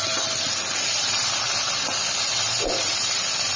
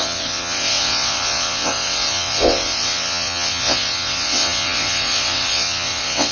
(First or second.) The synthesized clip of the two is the second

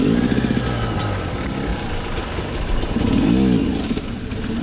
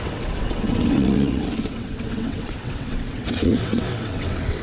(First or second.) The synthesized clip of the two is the second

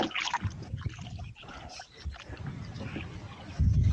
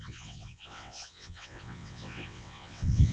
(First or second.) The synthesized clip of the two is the second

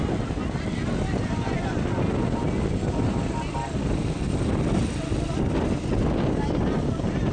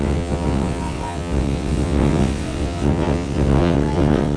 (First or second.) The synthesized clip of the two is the second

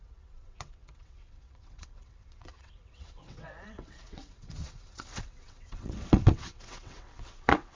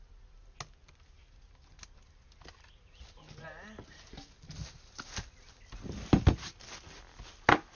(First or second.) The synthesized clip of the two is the first